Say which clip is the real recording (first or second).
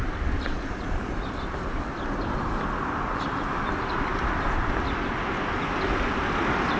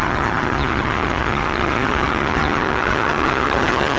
first